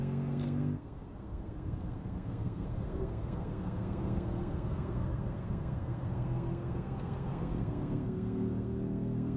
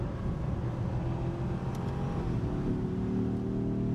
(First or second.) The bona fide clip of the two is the second